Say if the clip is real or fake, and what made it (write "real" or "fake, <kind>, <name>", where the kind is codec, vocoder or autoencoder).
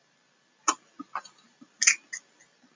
real